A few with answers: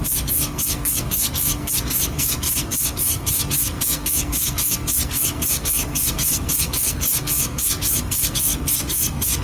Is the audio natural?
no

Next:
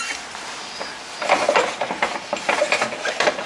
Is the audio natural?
yes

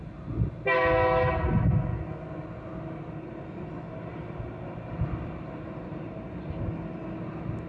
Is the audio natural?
yes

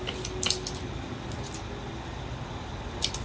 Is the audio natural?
yes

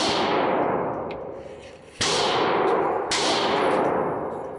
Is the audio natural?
yes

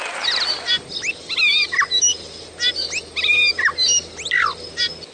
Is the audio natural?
yes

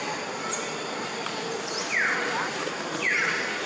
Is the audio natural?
yes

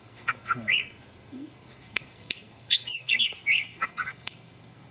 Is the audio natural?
no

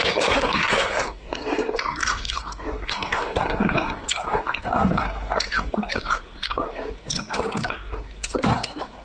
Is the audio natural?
no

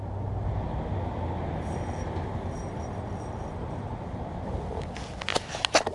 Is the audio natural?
yes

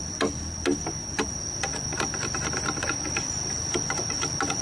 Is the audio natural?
yes